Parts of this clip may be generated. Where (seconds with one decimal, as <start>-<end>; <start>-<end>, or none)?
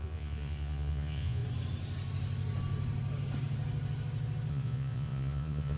0.0-1.4; 4.5-5.8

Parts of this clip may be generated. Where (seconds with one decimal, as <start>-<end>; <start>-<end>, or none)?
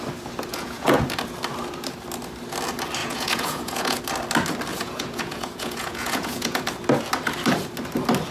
0.5-1.0; 3.0-4.0; 4.7-6.6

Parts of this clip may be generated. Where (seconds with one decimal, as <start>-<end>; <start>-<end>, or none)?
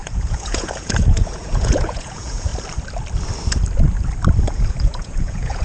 0.0-2.5; 4.5-5.6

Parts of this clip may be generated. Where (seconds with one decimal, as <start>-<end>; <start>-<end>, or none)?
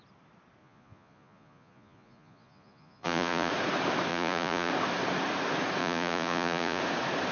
0.6-3.5; 4.1-4.7; 5.8-6.8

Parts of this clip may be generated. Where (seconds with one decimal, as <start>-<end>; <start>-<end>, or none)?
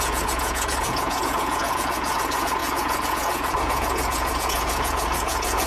0.0-5.7